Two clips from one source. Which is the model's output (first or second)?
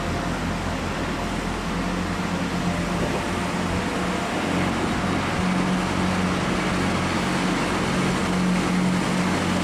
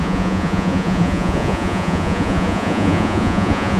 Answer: second